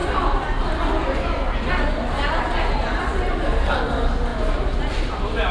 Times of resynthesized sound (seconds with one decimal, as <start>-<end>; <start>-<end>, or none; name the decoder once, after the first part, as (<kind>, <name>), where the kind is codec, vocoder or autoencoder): none